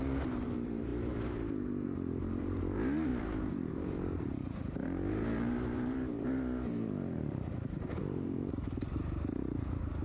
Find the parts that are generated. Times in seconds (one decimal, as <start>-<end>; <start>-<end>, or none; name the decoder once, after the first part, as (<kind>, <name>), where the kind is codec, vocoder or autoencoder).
0.0-10.0 (vocoder, BigVGAN v2)